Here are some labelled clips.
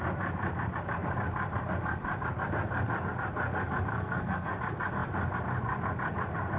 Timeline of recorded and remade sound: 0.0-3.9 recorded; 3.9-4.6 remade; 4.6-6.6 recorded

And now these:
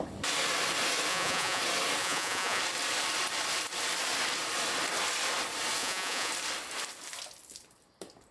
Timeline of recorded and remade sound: 0.0-1.1 recorded; 1.1-1.6 remade; 1.6-2.0 recorded; 2.0-2.6 remade; 2.6-5.8 recorded; 5.8-6.3 remade; 6.3-8.3 recorded